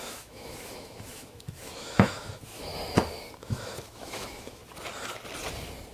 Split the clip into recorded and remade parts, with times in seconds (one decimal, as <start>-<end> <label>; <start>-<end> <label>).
0.0-2.7 remade; 2.7-3.4 recorded; 3.4-4.6 remade; 4.6-5.9 recorded